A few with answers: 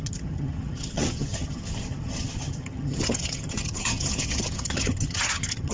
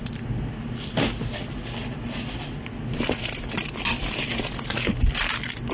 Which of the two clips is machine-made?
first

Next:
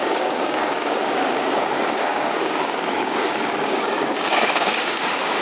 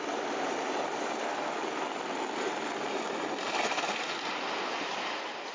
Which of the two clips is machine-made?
first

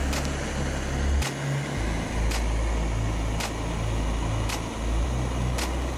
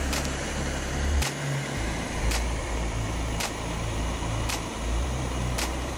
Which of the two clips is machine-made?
second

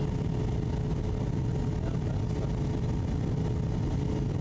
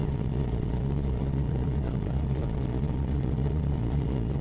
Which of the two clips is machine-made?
second